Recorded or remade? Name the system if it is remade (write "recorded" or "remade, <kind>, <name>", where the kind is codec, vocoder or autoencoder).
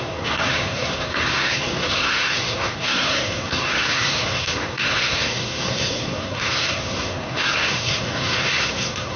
remade, codec, SNAC